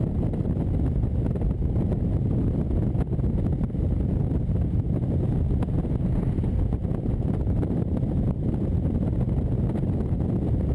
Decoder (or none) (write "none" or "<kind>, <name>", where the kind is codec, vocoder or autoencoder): none